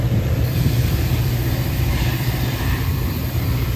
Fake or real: fake